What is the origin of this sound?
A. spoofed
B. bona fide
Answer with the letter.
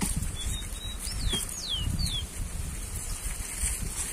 B